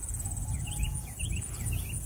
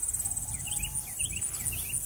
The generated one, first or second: first